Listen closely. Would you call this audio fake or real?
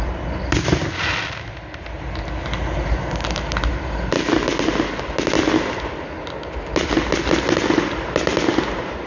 real